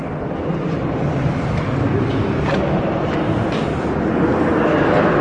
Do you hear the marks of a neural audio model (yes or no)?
no